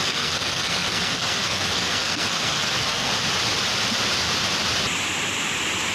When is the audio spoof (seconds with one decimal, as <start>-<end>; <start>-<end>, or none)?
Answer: 0.0-3.1